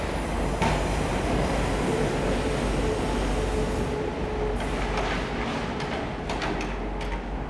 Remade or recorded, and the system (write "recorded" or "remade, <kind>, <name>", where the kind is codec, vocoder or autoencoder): recorded